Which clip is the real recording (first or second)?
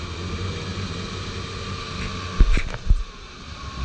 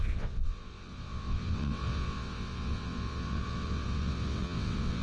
first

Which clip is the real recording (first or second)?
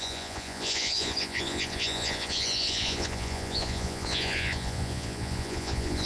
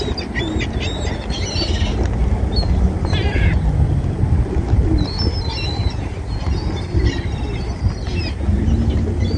second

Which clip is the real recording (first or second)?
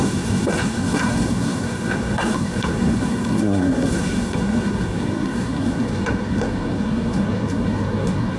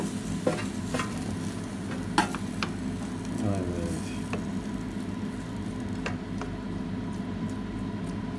second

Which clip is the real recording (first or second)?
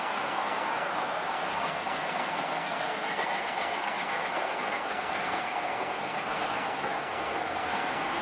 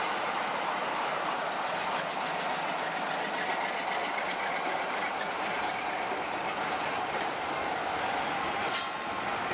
second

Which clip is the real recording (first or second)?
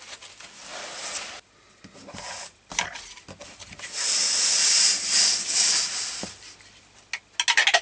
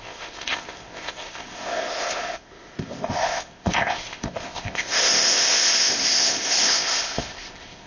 first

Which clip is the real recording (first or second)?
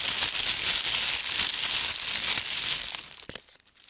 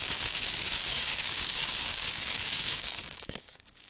first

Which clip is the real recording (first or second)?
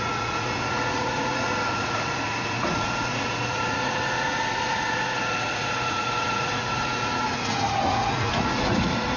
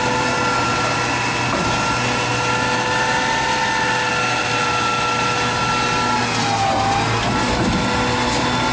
second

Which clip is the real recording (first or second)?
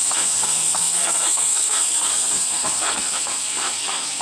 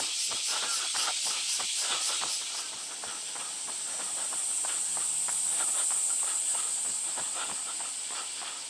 second